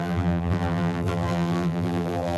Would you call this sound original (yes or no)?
no